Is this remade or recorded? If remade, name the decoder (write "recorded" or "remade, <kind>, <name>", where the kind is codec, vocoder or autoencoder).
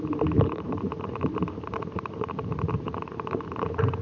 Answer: remade, vocoder, BigVGAN v2